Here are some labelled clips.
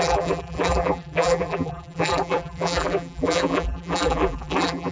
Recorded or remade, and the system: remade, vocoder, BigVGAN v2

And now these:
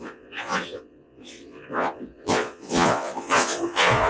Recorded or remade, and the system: remade, vocoder, Vocos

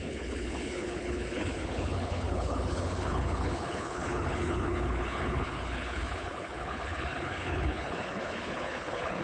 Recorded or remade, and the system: remade, codec, HILCodec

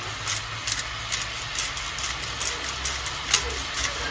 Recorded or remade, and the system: recorded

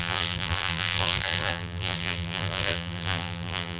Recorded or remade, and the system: remade, vocoder, BigVGAN v2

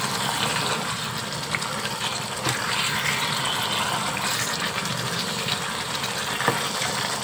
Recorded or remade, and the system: recorded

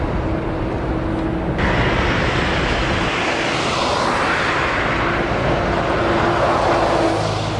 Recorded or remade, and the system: recorded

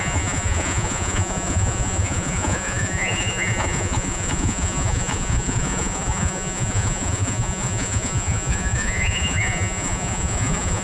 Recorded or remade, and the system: remade, vocoder, Vocos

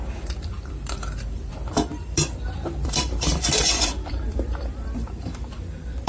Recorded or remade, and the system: remade, vocoder, BigVGAN v2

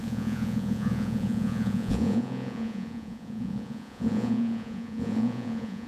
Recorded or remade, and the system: remade, vocoder, Vocos